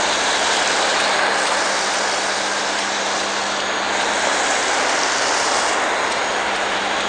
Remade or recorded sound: recorded